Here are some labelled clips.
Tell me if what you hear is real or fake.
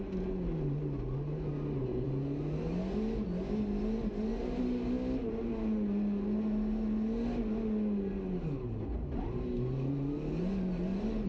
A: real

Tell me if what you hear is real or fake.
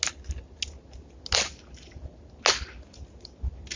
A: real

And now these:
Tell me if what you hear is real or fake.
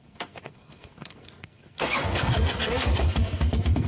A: fake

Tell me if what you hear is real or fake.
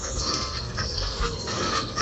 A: fake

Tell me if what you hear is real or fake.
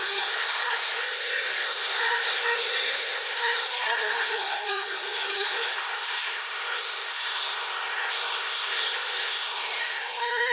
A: fake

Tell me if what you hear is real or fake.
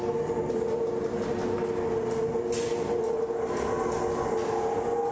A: real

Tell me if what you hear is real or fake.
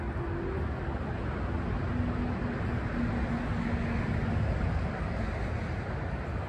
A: real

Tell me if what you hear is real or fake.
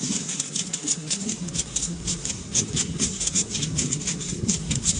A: fake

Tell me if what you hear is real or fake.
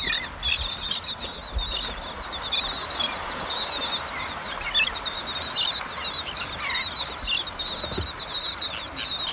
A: real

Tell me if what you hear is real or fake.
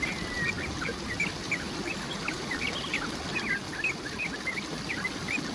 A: real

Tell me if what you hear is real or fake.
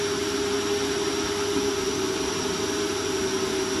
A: real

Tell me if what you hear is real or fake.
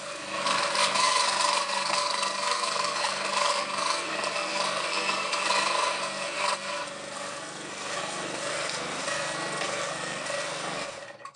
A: fake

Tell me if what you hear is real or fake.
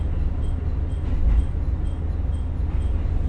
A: real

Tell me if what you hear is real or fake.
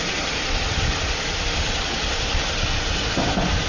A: real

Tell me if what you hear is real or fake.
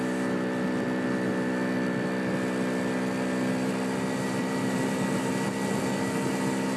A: real